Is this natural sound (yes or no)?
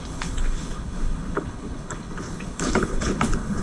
no